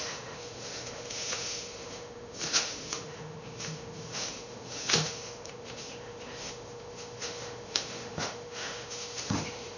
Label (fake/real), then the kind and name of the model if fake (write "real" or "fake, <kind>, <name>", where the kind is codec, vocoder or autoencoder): fake, autoencoder, DAC-VAE